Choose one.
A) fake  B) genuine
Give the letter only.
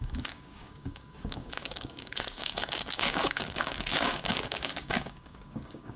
A